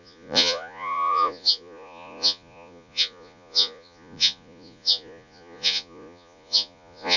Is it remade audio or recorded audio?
remade